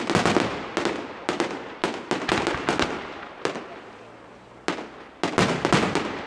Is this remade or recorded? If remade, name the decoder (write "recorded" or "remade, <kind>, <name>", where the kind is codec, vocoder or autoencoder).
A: recorded